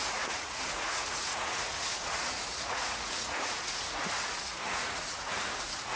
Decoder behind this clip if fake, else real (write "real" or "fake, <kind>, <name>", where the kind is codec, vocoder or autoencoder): fake, vocoder, Vocos